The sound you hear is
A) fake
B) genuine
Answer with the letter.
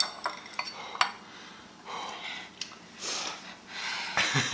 B